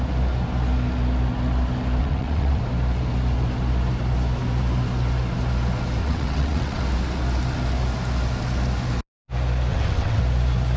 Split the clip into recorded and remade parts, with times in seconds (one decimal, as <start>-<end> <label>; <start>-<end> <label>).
0.0-2.0 recorded; 2.0-2.6 remade; 2.6-6.0 recorded; 6.0-6.8 remade; 6.8-9.7 recorded; 9.7-10.2 remade; 10.2-10.8 recorded